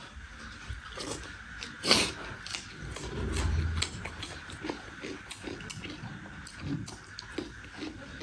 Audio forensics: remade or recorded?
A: recorded